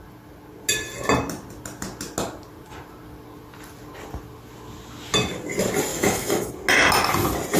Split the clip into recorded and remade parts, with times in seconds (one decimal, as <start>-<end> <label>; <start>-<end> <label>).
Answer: 0.0-5.9 recorded; 5.9-6.5 remade; 6.5-7.6 recorded